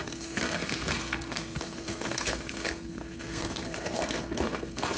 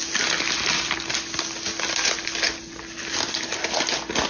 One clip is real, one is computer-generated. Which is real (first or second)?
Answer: second